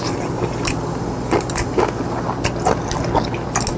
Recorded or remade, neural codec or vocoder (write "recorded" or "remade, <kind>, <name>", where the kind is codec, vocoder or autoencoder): recorded